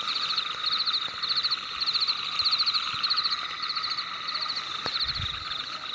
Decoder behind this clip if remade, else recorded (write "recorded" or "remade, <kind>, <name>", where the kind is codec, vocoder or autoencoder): recorded